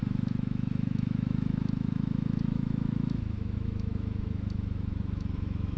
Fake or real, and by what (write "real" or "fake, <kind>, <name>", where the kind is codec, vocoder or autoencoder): fake, autoencoder, DAC-VAE